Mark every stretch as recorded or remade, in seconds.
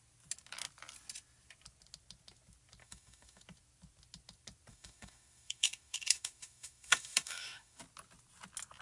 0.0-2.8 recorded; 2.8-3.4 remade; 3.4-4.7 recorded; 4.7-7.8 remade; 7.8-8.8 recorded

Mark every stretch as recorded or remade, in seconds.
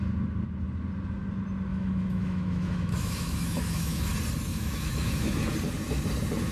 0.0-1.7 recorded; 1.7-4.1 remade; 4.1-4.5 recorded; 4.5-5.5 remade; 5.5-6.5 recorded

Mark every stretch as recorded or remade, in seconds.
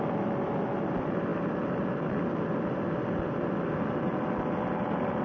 0.0-5.2 recorded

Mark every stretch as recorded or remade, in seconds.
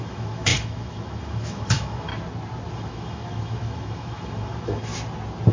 0.0-2.1 remade; 2.1-2.7 recorded; 2.7-4.9 remade; 4.9-5.5 recorded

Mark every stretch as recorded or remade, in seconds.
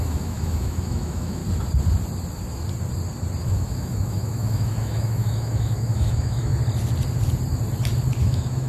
0.0-1.4 remade; 1.4-3.4 recorded; 3.4-6.5 remade; 6.5-8.2 recorded; 8.2-8.7 remade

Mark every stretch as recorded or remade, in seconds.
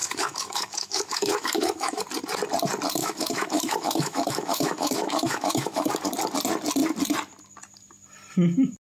0.0-2.0 remade; 2.0-3.0 recorded; 3.0-5.9 remade; 5.9-8.9 recorded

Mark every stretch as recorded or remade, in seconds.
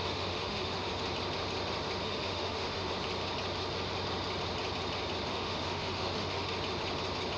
0.0-0.9 remade; 0.9-2.0 recorded; 2.0-2.9 remade; 2.9-5.3 recorded; 5.3-6.5 remade; 6.5-7.4 recorded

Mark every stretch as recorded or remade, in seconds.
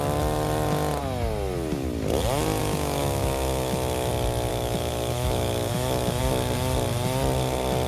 0.0-2.6 recorded; 2.6-4.1 remade; 4.1-4.5 recorded; 4.5-6.2 remade; 6.2-7.9 recorded